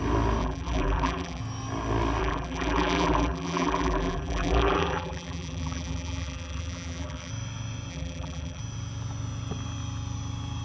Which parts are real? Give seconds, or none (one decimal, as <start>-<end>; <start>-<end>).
0.0-0.4; 1.4-2.2; 7.3-7.9; 8.6-10.6